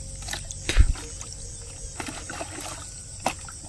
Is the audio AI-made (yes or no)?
no